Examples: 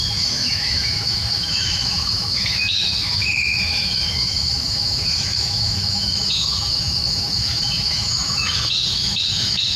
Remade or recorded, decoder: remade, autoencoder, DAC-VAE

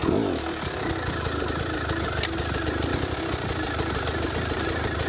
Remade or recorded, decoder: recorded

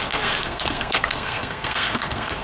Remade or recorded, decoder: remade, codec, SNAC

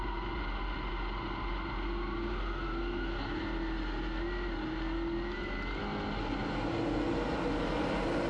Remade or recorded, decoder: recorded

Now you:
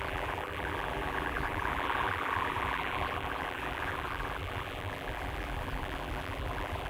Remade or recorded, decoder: remade, vocoder, BigVGAN v2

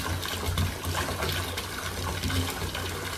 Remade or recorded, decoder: recorded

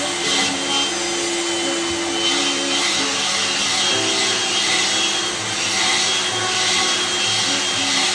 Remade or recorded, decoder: recorded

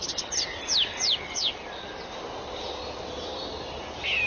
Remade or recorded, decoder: recorded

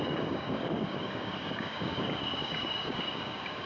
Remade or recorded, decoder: remade, codec, DAC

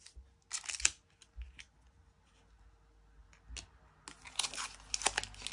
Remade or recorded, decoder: recorded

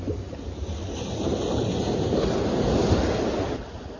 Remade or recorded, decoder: recorded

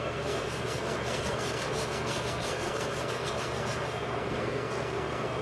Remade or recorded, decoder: remade, codec, SNAC